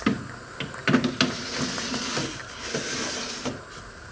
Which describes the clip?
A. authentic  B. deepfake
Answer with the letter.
A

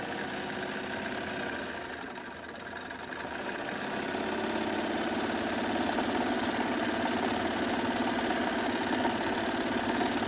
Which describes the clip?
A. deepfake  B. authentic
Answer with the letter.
B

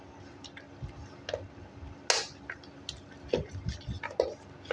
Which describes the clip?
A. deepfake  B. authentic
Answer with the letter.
B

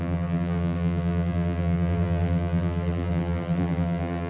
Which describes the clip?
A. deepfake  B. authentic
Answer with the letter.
A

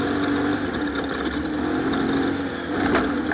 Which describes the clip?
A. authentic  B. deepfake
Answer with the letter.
A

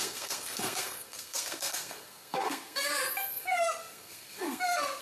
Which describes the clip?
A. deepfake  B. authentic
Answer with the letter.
A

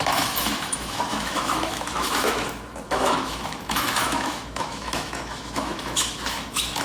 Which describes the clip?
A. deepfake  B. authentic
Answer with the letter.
A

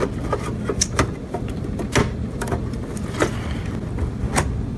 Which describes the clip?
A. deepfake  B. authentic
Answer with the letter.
B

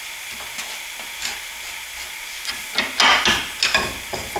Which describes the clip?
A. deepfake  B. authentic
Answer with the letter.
B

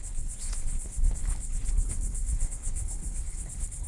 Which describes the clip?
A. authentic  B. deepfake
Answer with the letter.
B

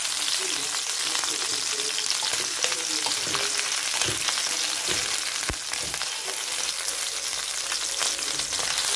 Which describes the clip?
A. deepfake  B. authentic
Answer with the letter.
B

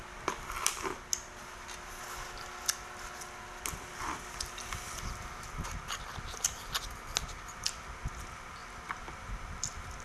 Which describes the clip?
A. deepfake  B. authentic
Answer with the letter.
B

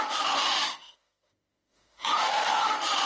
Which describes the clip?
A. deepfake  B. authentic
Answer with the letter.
A